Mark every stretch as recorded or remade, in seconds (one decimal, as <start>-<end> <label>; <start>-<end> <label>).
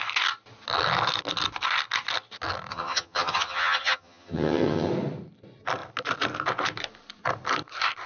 0.0-2.7 recorded; 2.7-4.9 remade; 4.9-8.1 recorded